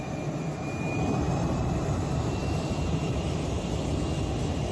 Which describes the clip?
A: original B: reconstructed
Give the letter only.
A